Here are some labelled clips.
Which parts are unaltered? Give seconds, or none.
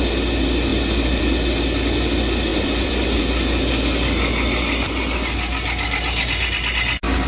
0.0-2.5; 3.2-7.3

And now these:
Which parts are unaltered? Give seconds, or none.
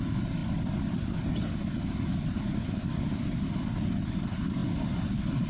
0.0-5.5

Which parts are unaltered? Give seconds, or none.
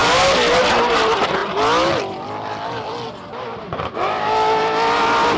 0.0-0.9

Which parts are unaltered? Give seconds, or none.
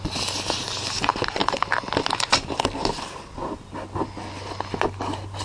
0.0-5.4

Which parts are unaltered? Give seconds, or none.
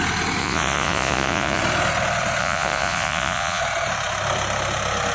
0.0-0.4; 1.6-2.4; 3.6-5.1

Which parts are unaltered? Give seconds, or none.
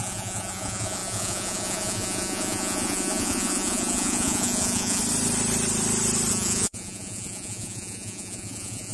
5.0-6.3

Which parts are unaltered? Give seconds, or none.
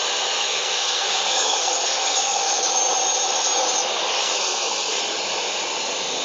0.0-0.4; 2.6-4.2; 5.0-6.2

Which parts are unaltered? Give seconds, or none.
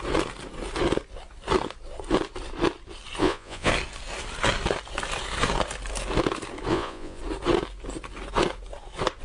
0.0-3.2; 3.7-6.7; 7.2-9.2